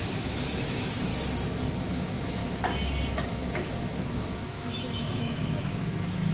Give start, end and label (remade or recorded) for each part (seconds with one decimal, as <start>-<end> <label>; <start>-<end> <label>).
0.0-1.1 remade; 1.1-1.7 recorded; 1.7-2.4 remade; 2.4-3.3 recorded; 3.3-6.3 remade